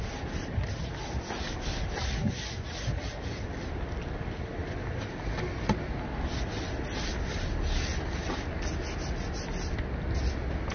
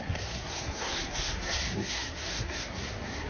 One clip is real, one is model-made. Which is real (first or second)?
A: first